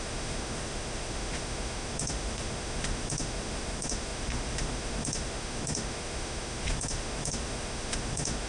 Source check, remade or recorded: remade